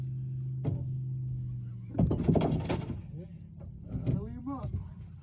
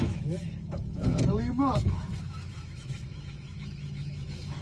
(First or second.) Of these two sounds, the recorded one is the first